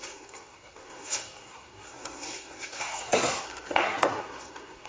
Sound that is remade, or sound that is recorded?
remade